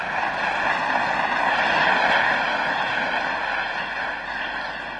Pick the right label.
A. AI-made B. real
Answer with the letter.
B